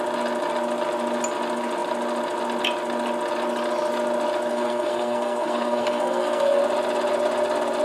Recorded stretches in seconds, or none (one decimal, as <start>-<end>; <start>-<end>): 0.0-4.5; 6.6-7.8